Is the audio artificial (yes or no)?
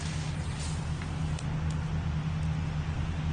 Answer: no